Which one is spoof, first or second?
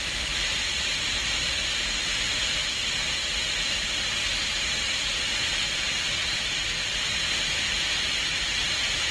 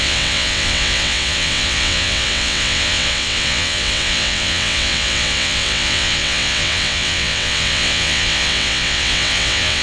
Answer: second